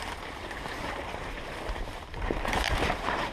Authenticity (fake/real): fake